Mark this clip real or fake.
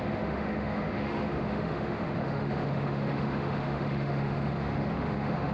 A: fake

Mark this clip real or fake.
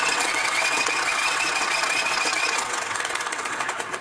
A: fake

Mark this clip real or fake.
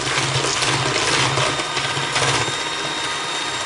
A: real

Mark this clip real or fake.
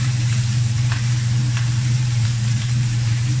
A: fake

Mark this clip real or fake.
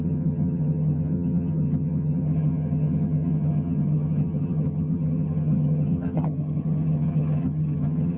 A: fake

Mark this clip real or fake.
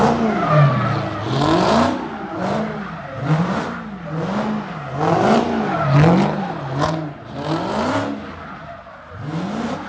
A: real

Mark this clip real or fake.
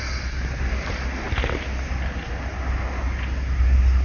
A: real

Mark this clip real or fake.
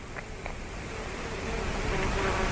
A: fake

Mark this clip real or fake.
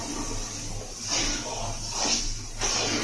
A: real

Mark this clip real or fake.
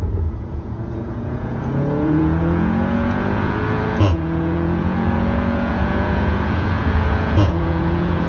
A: fake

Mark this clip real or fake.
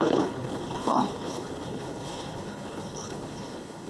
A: fake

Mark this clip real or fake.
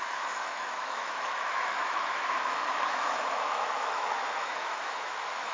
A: fake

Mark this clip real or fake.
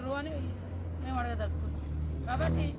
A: real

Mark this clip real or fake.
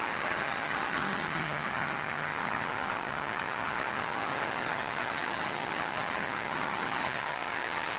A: fake